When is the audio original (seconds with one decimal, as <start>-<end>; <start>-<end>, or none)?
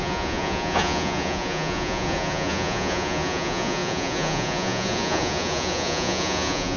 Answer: none